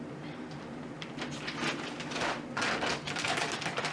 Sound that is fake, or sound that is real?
fake